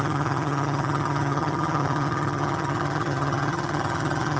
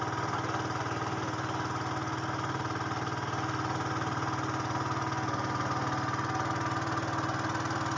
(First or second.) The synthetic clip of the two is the first